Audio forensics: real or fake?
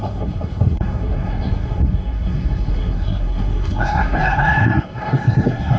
fake